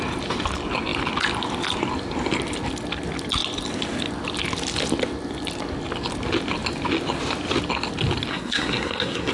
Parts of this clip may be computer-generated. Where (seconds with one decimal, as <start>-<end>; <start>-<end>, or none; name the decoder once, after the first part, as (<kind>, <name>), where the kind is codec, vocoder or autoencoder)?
8.3-9.3 (codec, SNAC)